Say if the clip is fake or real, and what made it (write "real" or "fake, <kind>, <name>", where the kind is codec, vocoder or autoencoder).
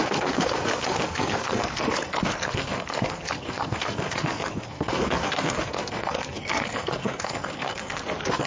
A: fake, codec, SNAC